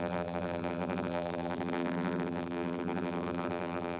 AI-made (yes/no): yes